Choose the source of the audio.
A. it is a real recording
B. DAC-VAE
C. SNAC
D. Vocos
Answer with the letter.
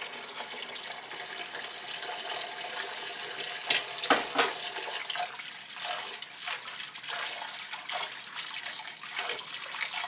A